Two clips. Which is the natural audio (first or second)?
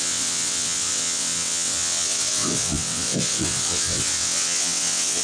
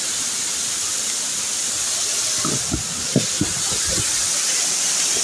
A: second